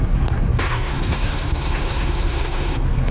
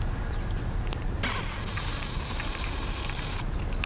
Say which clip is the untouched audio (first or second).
second